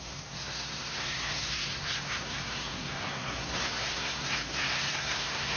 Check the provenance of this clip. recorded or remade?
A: remade